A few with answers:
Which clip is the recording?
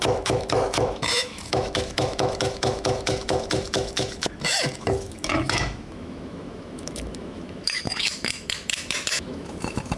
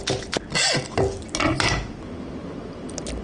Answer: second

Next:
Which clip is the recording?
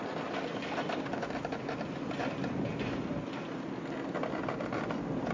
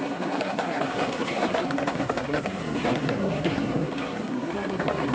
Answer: first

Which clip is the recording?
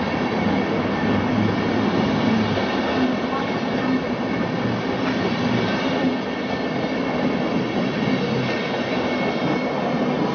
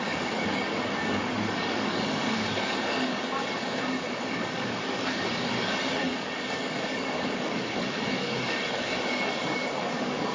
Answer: first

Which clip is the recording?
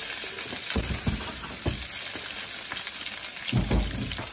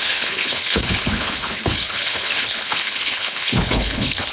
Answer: first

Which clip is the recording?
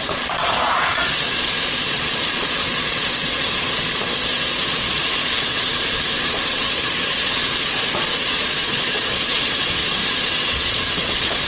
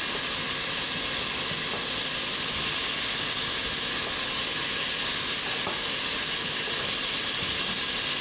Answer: second